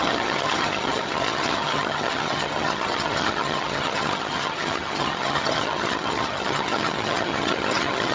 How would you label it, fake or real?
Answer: fake